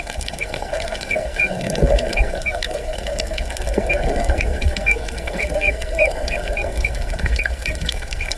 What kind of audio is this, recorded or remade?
remade